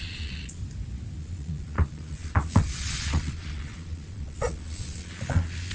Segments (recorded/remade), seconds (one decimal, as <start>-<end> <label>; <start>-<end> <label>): 0.0-0.6 remade; 0.6-1.2 recorded; 1.2-5.7 remade